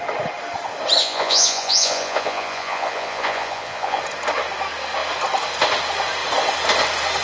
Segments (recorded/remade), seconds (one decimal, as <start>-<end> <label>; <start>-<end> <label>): 0.0-1.0 recorded; 1.0-4.0 remade; 4.0-7.2 recorded